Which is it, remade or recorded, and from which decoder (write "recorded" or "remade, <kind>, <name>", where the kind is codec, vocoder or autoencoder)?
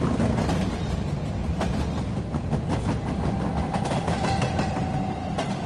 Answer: recorded